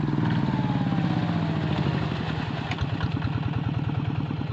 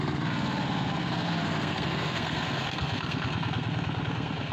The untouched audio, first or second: first